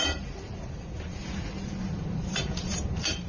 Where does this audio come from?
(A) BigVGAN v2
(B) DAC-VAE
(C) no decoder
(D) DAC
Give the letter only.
A